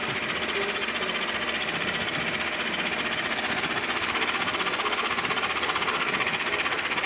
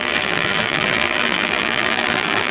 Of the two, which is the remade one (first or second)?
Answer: second